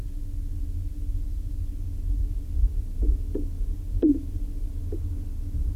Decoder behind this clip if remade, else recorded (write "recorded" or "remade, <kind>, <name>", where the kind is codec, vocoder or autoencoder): recorded